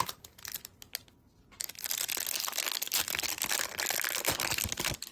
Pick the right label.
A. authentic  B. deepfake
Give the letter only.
A